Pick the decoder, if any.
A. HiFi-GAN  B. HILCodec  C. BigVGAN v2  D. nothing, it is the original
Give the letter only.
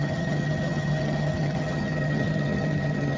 A